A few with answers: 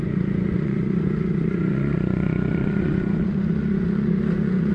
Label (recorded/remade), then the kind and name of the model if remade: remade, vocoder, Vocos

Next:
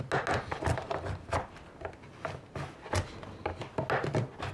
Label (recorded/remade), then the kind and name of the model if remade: recorded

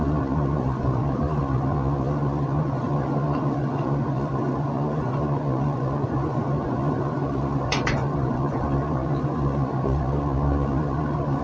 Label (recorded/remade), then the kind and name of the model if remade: remade, vocoder, Vocos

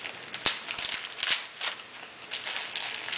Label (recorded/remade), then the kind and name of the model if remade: recorded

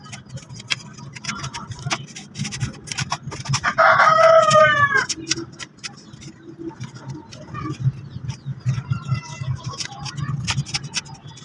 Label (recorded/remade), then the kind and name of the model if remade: recorded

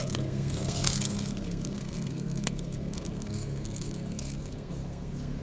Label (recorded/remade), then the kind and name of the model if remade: remade, codec, SNAC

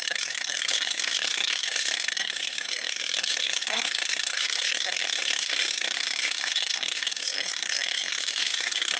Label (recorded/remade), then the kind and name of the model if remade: remade, codec, SNAC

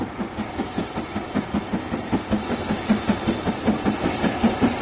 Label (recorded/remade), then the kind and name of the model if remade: recorded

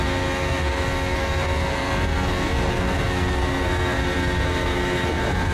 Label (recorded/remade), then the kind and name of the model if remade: remade, codec, SNAC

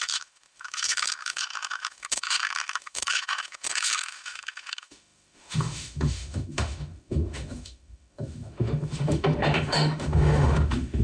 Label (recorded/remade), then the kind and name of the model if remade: remade, autoencoder, DAC-VAE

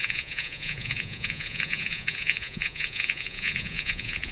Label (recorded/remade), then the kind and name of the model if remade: remade, vocoder, Vocos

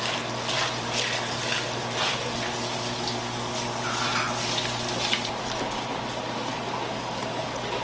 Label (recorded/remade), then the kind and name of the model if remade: recorded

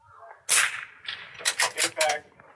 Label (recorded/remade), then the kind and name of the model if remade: recorded